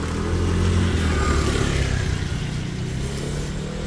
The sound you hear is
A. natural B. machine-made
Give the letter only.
A